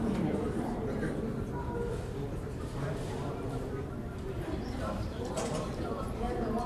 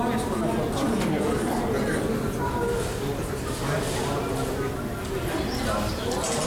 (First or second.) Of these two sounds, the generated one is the first